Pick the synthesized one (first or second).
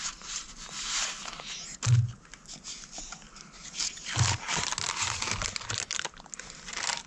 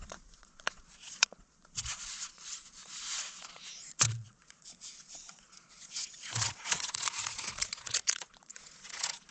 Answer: second